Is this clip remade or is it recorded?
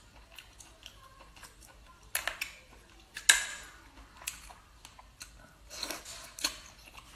recorded